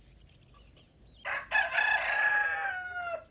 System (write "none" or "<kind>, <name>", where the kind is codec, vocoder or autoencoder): none